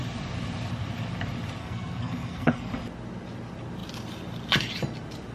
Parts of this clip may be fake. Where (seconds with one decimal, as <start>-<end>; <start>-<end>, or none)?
1.6-2.7